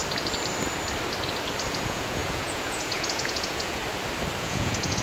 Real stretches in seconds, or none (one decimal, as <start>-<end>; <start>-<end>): 0.0-1.7; 3.8-4.4